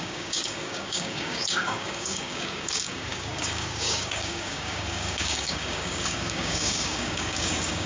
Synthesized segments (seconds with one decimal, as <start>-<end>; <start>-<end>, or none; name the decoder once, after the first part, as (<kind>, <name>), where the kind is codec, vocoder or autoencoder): 0.0-7.9 (codec, DAC)